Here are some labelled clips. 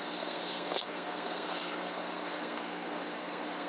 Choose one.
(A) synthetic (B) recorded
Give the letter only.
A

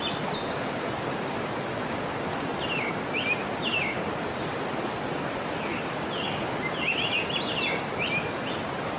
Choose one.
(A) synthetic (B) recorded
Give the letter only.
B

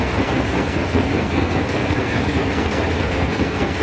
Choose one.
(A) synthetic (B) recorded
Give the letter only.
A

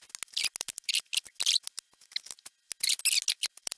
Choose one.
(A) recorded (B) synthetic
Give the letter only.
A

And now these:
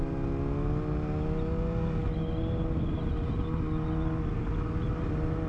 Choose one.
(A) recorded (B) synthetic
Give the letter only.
A